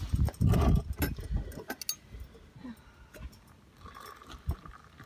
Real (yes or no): yes